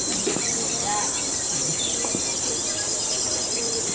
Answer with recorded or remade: remade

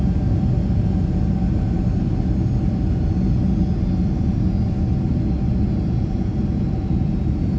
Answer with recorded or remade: recorded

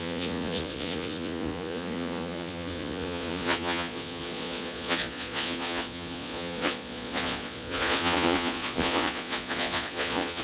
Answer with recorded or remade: remade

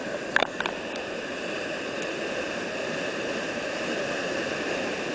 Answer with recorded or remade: remade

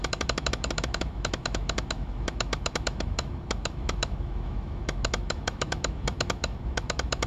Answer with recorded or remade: remade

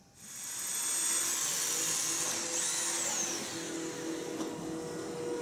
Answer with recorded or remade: recorded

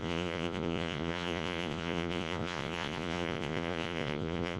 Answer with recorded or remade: remade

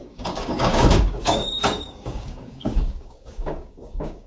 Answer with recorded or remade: remade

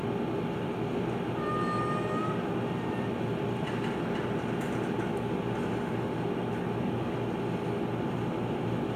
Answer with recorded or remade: recorded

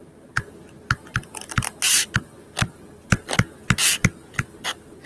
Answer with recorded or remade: recorded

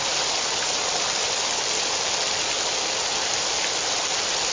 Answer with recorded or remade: recorded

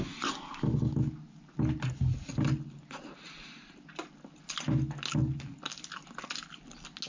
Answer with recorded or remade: recorded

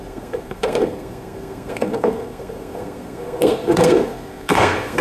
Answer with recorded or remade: remade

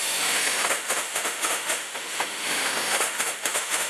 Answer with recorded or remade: remade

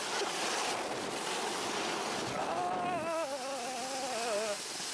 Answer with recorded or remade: recorded